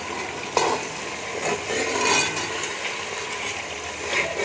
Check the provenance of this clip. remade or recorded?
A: recorded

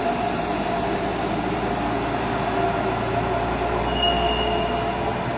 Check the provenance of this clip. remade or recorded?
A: recorded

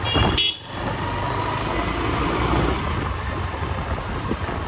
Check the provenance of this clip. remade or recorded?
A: recorded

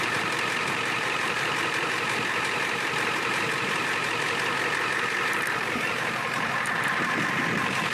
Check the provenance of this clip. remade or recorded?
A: remade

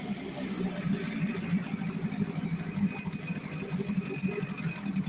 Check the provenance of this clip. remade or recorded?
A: recorded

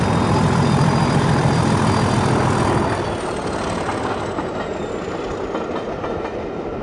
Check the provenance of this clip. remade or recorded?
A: recorded